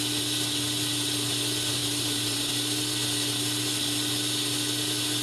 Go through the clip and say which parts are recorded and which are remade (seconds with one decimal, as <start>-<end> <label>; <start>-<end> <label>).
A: 0.0-1.8 recorded; 1.8-2.5 remade; 2.5-5.2 recorded